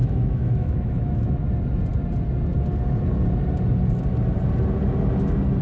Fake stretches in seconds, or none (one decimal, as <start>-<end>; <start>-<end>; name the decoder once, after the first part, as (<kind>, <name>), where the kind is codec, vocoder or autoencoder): 0.0-1.4 (autoencoder, DAC-VAE)